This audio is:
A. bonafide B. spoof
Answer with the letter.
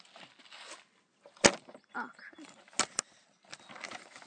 A